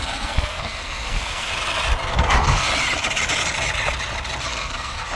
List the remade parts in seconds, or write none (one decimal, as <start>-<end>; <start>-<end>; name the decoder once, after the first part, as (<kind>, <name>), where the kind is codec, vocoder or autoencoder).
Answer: 0.0-1.5 (codec, SNAC); 2.1-2.7; 4.5-5.2